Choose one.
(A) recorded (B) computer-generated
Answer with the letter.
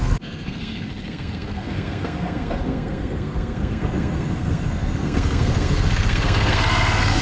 B